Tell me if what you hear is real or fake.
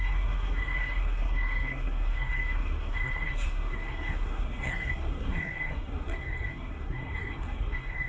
fake